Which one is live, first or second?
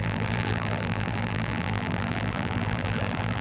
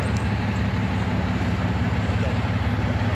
second